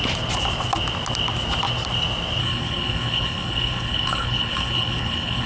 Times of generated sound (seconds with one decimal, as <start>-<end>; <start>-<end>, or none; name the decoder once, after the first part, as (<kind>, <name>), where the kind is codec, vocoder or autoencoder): 2.4-5.5 (codec, HILCodec)